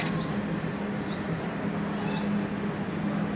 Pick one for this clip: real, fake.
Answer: real